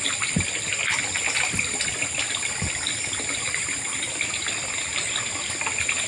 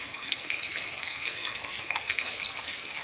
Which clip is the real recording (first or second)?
first